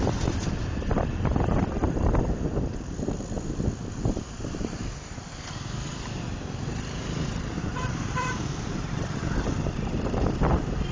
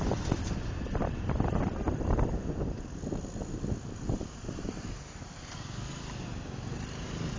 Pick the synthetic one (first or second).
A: first